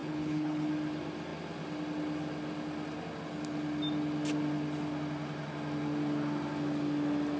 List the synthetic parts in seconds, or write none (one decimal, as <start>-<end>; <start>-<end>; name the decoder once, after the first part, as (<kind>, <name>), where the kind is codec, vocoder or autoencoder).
0.0-0.7 (codec, HILCodec)